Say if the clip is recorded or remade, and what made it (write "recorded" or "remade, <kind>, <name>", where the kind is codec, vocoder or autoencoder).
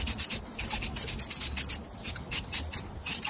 recorded